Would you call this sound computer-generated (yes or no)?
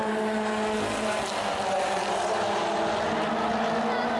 no